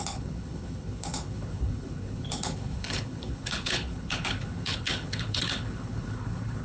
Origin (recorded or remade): remade